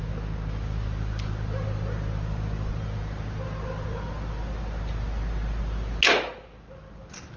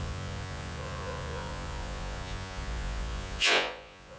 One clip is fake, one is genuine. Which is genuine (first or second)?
first